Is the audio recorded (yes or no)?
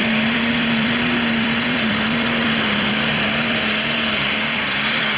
no